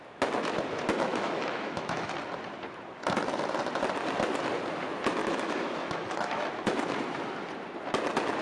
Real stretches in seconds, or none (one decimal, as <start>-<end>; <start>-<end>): 0.0-1.1; 2.1-5.2; 6.4-8.4